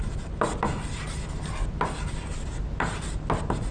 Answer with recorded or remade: recorded